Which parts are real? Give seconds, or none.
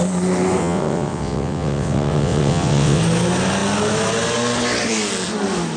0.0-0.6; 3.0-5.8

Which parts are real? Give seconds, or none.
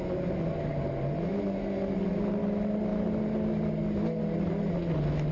0.0-5.3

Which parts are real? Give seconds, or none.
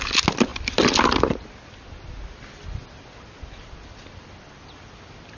0.0-5.4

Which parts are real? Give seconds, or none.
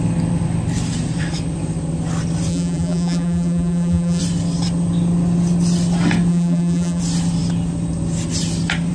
0.0-2.5; 4.2-6.3; 7.0-8.9